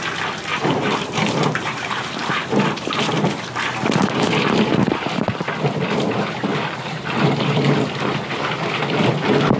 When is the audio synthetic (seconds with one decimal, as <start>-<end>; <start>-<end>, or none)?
0.5-3.1; 6.5-7.8